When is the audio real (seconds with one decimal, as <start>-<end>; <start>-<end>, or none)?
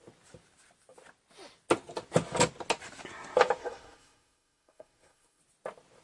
0.0-3.6; 5.4-6.0